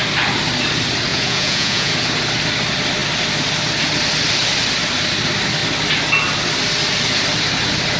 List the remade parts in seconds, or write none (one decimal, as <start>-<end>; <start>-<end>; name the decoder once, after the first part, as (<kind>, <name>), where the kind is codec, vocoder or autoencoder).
1.1-1.9 (vocoder, Vocos)